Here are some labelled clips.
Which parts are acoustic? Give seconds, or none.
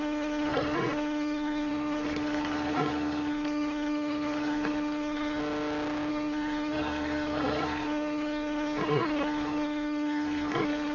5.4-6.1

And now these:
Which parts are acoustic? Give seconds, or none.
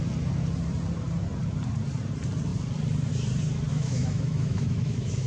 0.0-3.7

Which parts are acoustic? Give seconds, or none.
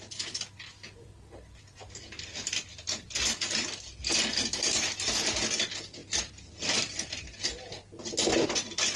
0.0-9.0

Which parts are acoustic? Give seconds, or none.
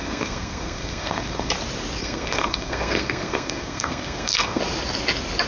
1.5-2.0; 4.6-5.5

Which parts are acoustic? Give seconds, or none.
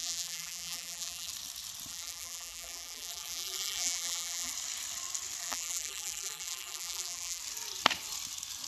1.3-1.9; 4.5-5.4; 7.4-8.7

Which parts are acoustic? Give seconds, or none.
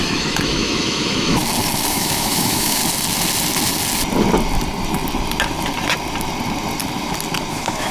1.4-1.9; 2.8-7.5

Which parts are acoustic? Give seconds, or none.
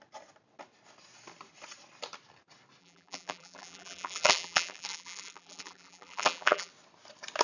0.0-2.8; 6.7-7.4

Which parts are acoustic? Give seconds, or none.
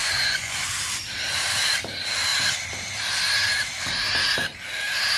0.7-5.2